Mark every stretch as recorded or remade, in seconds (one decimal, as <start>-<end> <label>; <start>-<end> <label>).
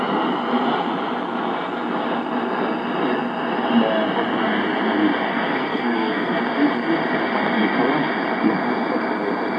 0.0-5.3 recorded; 5.3-6.4 remade; 6.4-9.6 recorded